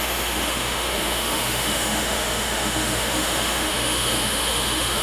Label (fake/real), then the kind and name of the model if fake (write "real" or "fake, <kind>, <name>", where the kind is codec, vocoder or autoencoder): fake, autoencoder, DAC-VAE